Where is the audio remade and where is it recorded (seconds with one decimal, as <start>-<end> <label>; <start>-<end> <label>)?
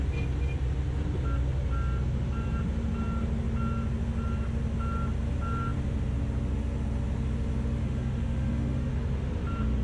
0.0-7.8 recorded; 7.8-8.9 remade; 8.9-9.8 recorded